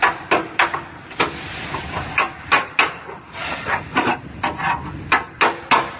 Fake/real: real